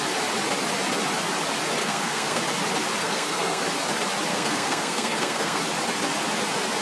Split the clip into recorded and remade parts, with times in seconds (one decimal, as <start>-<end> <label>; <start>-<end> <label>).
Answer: 0.0-1.8 recorded; 1.8-2.4 remade; 2.4-3.0 recorded; 3.0-3.6 remade; 3.6-4.3 recorded; 4.3-5.6 remade; 5.6-6.8 recorded